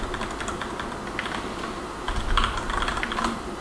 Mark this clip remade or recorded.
recorded